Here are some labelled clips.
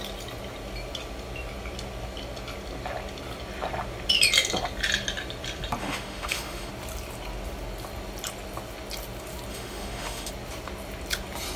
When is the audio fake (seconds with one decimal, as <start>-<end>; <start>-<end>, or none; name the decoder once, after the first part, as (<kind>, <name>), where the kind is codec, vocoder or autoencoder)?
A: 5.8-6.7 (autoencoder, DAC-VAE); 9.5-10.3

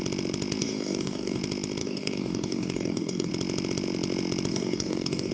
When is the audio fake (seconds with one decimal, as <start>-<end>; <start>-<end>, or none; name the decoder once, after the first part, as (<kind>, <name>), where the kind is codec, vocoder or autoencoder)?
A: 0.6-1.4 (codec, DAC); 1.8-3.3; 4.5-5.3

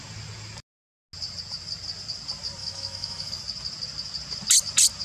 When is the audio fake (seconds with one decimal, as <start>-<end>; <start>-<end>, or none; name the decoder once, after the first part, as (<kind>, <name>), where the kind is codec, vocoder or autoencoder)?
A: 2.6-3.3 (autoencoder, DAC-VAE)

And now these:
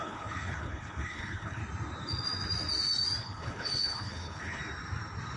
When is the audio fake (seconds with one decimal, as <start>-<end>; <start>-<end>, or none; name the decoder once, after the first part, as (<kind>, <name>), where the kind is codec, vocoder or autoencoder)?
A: 0.0-1.6 (codec, HILCodec); 3.2-4.6